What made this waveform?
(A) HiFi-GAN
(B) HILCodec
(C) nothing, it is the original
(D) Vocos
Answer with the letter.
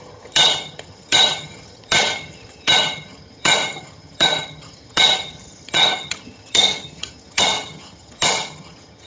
A